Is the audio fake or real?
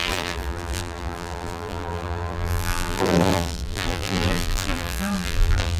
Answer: fake